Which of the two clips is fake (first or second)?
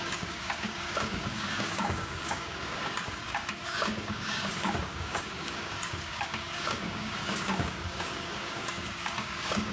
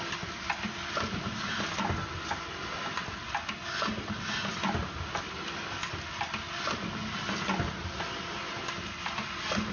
first